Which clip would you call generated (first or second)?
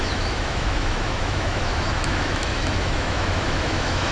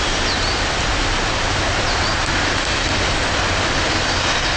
first